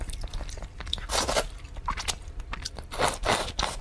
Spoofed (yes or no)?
no